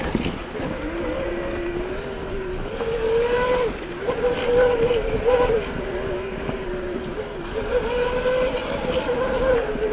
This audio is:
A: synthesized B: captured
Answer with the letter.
B